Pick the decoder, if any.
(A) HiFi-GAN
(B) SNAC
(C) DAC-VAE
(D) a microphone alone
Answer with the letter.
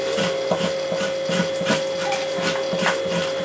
D